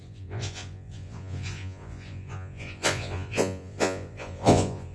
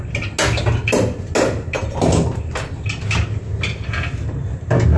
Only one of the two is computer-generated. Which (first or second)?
first